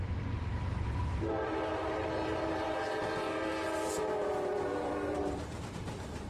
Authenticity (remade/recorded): remade